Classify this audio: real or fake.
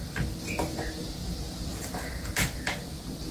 real